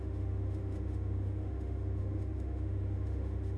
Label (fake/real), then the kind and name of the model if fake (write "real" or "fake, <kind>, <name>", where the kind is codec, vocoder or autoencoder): fake, autoencoder, DAC-VAE